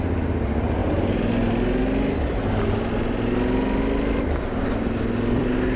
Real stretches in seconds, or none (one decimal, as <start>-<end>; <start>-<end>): 0.0-5.8